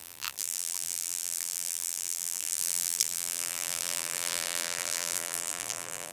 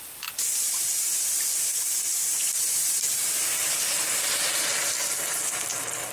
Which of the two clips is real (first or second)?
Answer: second